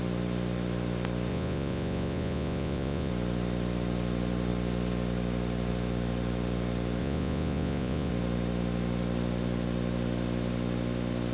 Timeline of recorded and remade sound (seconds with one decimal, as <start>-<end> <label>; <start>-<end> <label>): 0.0-1.3 recorded; 1.3-3.1 remade; 3.1-7.0 recorded; 7.0-8.1 remade; 8.1-11.3 recorded